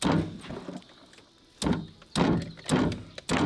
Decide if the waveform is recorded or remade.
recorded